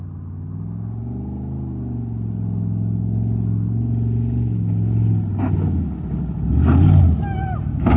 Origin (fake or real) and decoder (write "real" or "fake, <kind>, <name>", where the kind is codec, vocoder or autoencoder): real